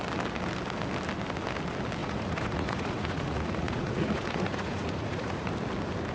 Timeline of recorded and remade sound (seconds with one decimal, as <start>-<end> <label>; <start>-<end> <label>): 0.0-2.0 recorded; 2.0-5.5 remade; 5.5-6.1 recorded